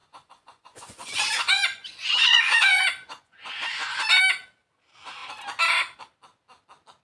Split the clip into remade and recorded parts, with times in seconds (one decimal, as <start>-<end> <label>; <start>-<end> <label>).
0.0-4.2 remade; 4.2-7.0 recorded